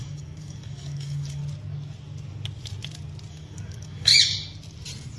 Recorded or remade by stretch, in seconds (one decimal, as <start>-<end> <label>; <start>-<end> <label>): 0.0-1.4 remade; 1.4-3.3 recorded; 3.3-4.1 remade; 4.1-5.2 recorded